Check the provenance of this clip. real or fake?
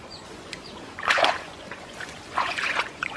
fake